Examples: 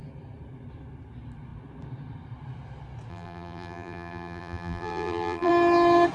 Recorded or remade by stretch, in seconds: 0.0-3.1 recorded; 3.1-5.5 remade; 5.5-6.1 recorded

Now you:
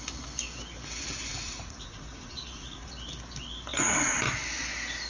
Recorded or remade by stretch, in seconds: 0.0-1.3 recorded; 1.3-2.9 remade; 2.9-3.7 recorded; 3.7-4.2 remade; 4.2-5.1 recorded

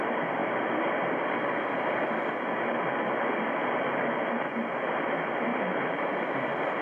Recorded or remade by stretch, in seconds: 0.0-0.4 recorded; 0.4-2.2 remade; 2.2-3.6 recorded; 3.6-4.4 remade; 4.4-5.5 recorded; 5.5-6.2 remade; 6.2-6.8 recorded

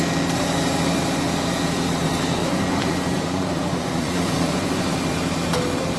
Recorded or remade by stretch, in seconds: 0.0-2.4 recorded; 2.4-5.0 remade; 5.0-6.0 recorded

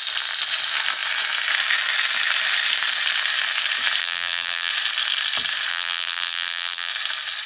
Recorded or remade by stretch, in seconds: 0.0-4.0 recorded; 4.0-4.7 remade; 4.7-5.7 recorded; 5.7-6.9 remade; 6.9-7.5 recorded

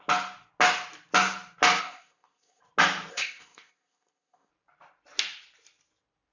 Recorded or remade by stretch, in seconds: 0.0-1.8 recorded; 1.8-2.6 remade; 2.6-3.1 recorded; 3.1-4.5 remade; 4.5-6.3 recorded

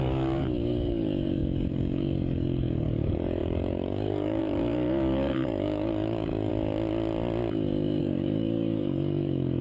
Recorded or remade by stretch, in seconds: 0.0-6.5 remade; 6.5-8.0 recorded; 8.0-9.6 remade